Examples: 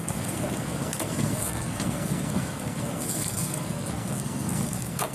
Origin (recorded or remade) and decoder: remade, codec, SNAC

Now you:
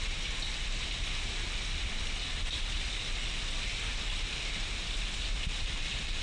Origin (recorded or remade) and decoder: recorded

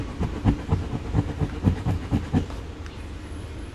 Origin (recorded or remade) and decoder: recorded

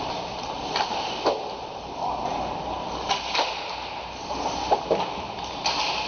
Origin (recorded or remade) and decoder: recorded